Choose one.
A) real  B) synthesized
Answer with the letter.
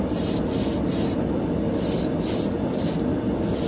A